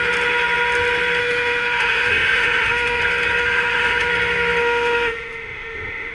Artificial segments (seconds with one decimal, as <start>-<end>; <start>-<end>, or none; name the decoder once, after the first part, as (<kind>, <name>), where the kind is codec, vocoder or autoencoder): 1.2-3.0 (autoencoder, DAC-VAE); 3.4-4.1; 4.6-6.1